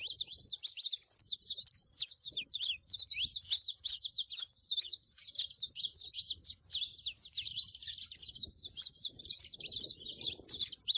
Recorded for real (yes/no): yes